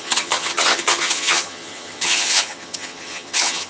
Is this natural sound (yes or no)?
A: no